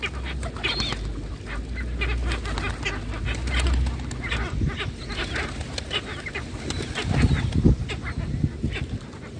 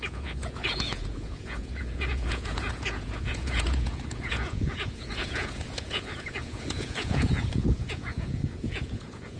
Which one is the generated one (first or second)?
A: second